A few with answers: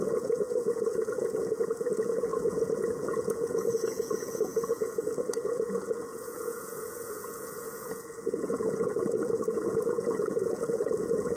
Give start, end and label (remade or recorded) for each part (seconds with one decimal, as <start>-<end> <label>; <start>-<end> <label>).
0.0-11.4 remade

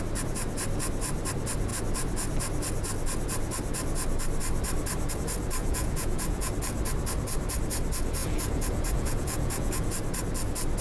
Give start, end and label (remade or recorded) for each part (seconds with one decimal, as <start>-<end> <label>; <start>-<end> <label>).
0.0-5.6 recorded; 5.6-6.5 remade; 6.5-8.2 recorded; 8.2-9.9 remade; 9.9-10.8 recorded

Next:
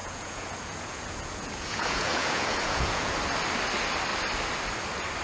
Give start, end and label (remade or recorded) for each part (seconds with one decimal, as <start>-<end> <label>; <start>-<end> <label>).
0.0-3.1 remade; 3.1-5.2 recorded

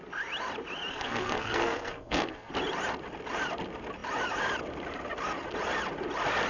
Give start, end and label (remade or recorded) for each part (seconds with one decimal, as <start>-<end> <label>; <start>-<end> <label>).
0.0-0.9 recorded; 0.9-2.5 remade; 2.5-6.5 recorded

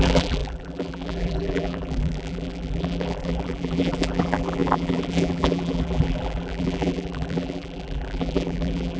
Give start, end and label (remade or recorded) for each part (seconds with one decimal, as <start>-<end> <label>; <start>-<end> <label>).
0.0-9.0 remade